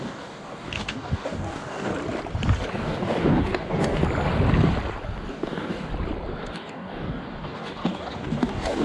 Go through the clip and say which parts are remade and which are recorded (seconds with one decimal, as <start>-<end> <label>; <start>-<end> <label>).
0.0-1.9 remade; 1.9-2.7 recorded; 2.7-4.0 remade; 4.0-5.3 recorded; 5.3-5.9 remade; 5.9-6.5 recorded; 6.5-8.8 remade